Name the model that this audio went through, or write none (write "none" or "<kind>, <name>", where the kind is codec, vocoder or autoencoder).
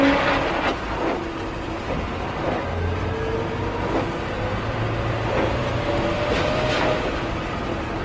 none